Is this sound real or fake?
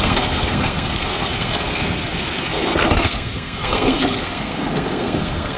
fake